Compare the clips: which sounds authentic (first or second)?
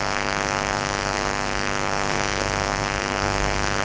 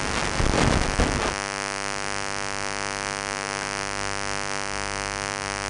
second